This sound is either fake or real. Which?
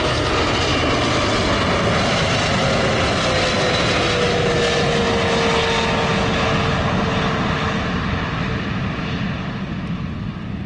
real